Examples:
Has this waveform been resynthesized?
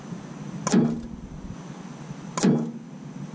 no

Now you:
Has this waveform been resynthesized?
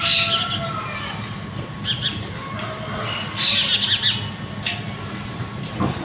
no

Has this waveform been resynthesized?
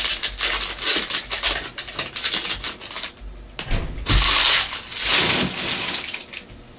no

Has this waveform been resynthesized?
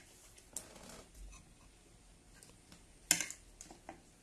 no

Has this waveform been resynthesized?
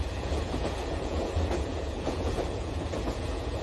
yes